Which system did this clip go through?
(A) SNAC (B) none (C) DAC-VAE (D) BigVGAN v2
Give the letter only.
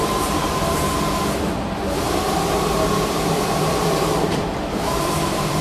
D